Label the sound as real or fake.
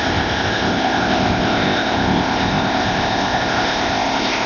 fake